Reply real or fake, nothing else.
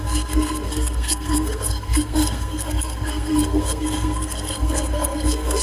fake